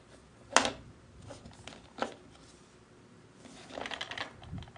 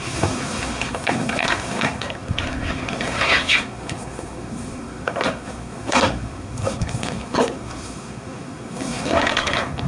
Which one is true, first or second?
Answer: first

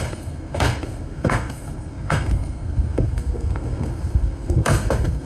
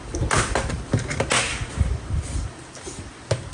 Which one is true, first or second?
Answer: second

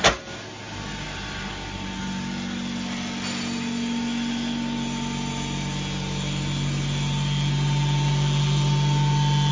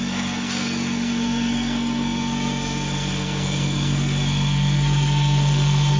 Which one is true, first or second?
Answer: first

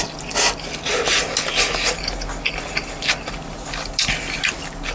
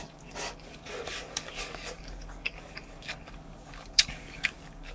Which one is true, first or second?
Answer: first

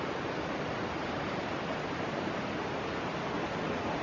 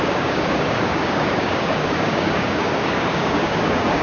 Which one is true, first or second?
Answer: first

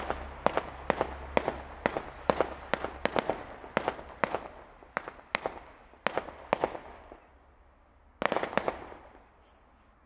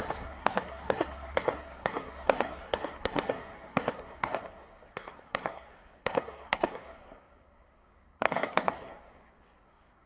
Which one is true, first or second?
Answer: first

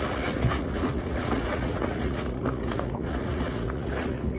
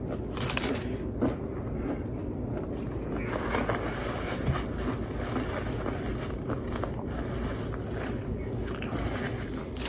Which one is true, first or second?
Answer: second